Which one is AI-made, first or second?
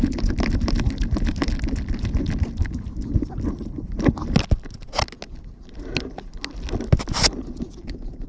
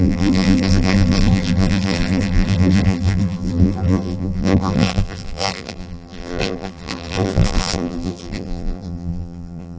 second